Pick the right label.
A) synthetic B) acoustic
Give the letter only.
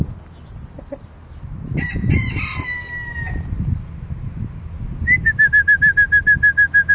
B